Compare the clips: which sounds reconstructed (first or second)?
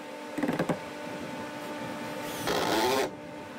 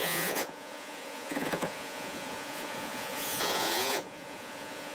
second